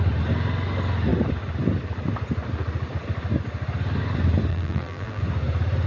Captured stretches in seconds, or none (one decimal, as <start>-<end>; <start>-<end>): 0.0-4.5; 5.2-5.9

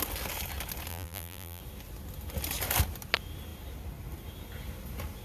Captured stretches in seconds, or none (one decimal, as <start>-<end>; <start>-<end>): 0.0-0.9; 1.6-5.2

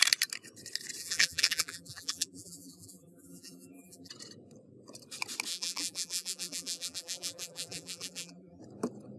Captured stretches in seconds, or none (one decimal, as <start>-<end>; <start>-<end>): 0.0-1.0; 4.1-5.5; 8.6-9.2

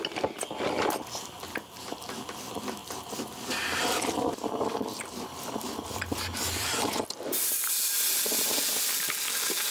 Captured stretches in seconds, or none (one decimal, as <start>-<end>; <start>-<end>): 0.0-2.8; 7.5-9.7

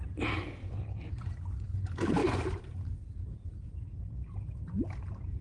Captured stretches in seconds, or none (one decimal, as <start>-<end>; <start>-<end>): 0.0-0.6; 1.3-2.2